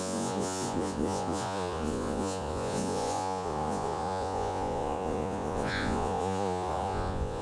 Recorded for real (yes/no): no